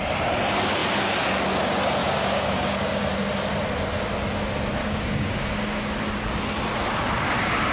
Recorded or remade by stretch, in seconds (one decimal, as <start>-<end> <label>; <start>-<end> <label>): 0.0-2.0 recorded; 2.0-3.0 remade; 3.0-4.8 recorded; 4.8-5.5 remade; 5.5-7.7 recorded